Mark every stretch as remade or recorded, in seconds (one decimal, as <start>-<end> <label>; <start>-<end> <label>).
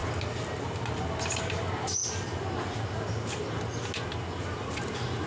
0.0-5.3 recorded